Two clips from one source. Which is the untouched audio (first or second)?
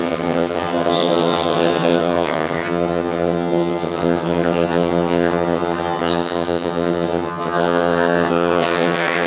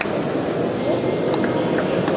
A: second